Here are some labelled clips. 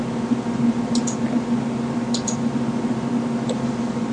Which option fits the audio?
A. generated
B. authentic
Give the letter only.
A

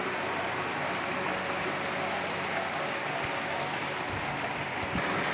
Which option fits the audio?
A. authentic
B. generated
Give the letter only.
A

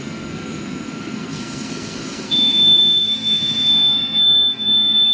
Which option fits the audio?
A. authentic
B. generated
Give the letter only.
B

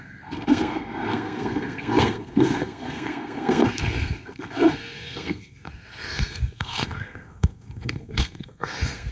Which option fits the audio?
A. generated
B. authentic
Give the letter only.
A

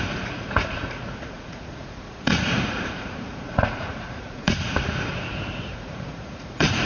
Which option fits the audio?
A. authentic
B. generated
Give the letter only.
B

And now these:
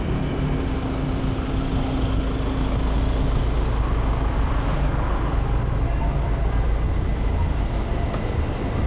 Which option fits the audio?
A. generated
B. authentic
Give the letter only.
B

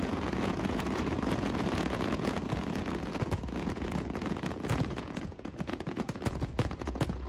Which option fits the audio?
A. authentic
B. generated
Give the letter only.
B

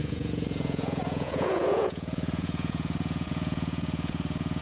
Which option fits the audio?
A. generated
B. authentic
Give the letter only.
A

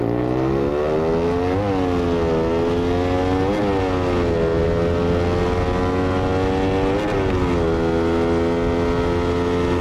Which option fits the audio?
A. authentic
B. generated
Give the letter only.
A